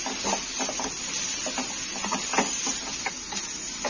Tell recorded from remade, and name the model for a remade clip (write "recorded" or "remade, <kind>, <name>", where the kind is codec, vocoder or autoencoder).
recorded